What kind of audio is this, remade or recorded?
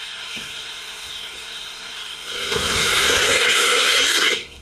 remade